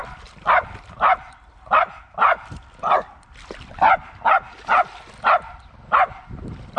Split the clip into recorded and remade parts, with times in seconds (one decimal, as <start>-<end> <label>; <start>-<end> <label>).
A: 0.0-3.7 remade; 3.7-6.8 recorded

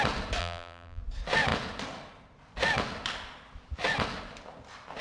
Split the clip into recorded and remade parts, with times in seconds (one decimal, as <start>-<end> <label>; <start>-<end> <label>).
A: 0.0-0.4 recorded; 0.4-1.0 remade; 1.0-5.0 recorded

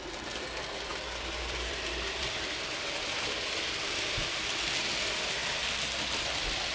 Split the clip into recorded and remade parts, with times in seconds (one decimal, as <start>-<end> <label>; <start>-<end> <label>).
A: 0.0-0.9 recorded; 0.9-4.9 remade; 4.9-6.7 recorded

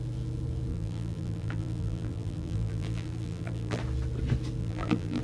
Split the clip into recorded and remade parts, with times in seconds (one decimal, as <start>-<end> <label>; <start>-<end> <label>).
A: 0.0-0.7 recorded; 0.7-3.8 remade; 3.8-4.6 recorded; 4.6-5.2 remade

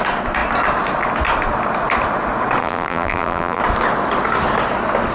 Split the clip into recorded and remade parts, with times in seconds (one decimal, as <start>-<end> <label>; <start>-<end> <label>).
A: 0.0-2.6 recorded; 2.6-3.6 remade; 3.6-5.1 recorded

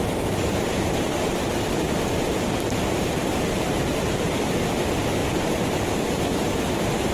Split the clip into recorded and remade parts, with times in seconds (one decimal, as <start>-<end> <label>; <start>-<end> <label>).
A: 0.0-4.3 remade; 4.3-5.2 recorded; 5.2-6.5 remade; 6.5-7.1 recorded

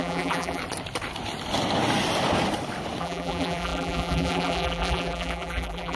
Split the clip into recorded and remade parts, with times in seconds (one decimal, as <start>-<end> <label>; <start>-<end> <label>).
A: 0.0-0.6 remade; 0.6-3.0 recorded; 3.0-6.0 remade